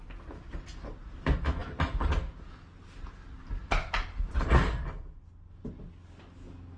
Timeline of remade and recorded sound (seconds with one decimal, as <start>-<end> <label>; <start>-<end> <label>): 0.0-6.8 recorded